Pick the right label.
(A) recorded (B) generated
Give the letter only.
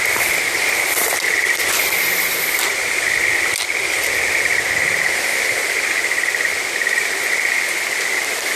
A